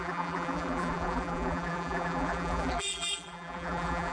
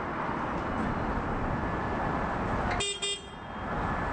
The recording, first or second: second